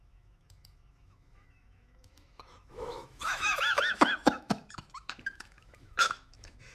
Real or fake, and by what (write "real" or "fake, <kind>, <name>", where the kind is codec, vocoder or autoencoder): fake, autoencoder, DAC-VAE